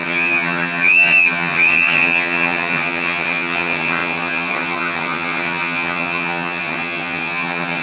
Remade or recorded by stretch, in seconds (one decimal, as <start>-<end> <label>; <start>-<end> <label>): 0.0-7.8 remade